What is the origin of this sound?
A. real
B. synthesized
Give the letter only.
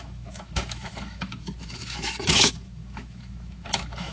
B